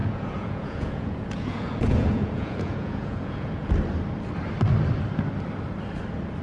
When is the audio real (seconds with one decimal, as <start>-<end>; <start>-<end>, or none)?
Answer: 3.7-6.4